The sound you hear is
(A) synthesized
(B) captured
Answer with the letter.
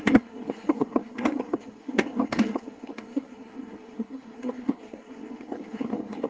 A